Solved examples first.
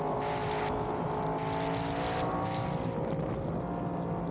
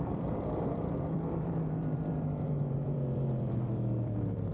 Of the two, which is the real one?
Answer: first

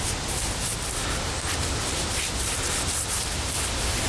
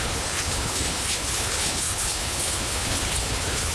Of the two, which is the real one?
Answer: first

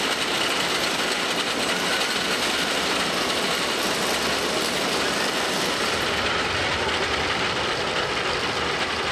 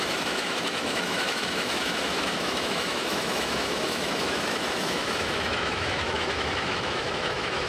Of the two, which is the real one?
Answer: first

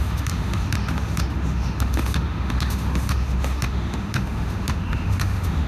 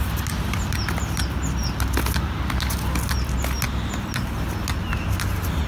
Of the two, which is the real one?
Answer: second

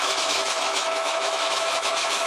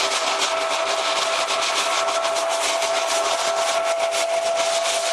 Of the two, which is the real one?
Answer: second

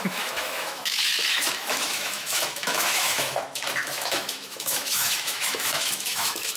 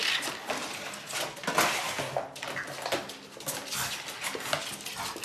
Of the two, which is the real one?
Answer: second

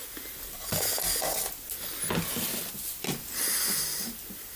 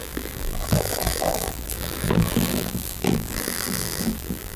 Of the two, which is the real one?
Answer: first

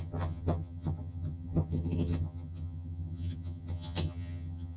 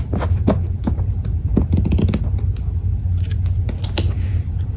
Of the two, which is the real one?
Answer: second